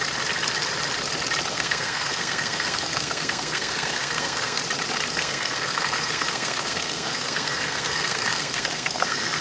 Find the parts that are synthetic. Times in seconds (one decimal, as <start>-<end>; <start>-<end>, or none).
1.5-4.6; 5.1-9.4